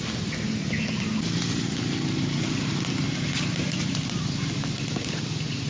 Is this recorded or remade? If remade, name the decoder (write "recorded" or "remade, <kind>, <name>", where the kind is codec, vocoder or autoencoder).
recorded